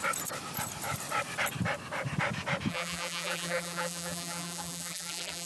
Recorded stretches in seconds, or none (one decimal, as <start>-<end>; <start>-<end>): 0.0-2.7